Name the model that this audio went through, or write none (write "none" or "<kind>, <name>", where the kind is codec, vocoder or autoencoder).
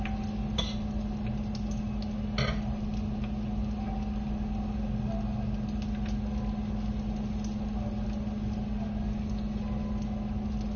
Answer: none